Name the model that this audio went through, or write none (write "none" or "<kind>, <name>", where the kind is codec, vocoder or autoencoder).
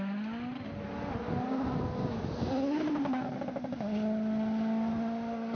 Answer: none